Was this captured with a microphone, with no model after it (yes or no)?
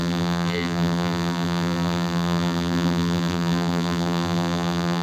no